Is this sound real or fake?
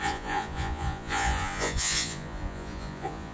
fake